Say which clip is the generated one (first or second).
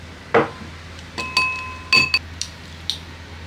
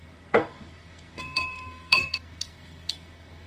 second